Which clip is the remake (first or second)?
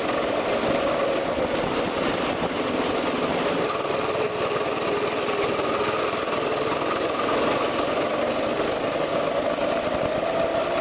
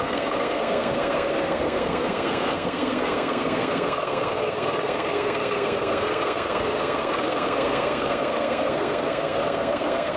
second